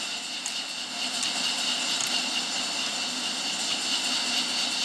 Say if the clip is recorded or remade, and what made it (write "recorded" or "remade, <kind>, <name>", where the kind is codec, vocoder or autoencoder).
recorded